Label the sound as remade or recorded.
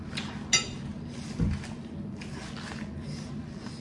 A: recorded